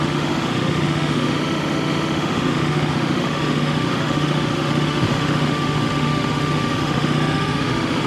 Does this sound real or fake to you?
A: fake